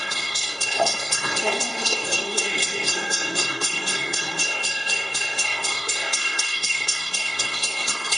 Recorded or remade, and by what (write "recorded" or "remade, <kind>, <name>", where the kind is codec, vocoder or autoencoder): remade, codec, SNAC